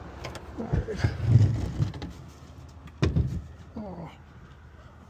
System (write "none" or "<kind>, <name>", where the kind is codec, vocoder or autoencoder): none